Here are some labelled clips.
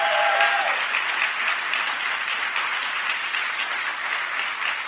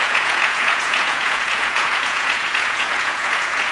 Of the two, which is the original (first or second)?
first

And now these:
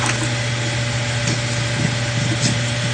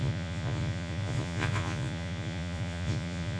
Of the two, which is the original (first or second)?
first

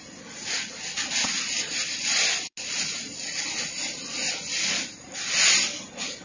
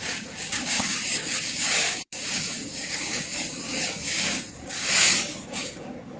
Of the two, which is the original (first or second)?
first